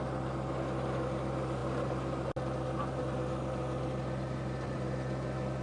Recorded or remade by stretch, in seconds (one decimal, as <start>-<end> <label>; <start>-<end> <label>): 0.0-5.6 recorded